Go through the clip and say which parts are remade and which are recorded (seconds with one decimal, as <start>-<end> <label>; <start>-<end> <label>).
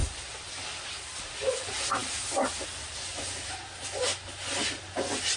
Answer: 0.0-5.4 recorded